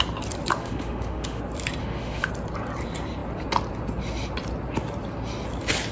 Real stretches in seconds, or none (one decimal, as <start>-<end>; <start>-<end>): 0.0-0.6; 1.4-1.8; 2.3-5.9